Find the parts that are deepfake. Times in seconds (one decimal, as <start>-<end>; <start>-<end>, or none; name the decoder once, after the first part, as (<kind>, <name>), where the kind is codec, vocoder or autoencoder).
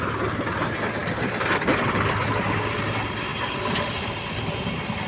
1.0-2.4 (vocoder, BigVGAN v2); 3.3-4.4